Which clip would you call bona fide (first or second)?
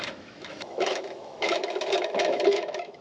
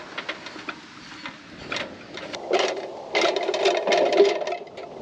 second